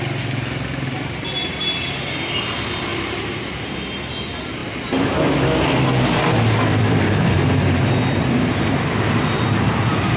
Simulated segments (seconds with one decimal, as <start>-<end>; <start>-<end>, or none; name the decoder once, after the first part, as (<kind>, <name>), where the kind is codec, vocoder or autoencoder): 2.9-3.9 (vocoder, BigVGAN v2); 4.6-5.1; 6.7-7.8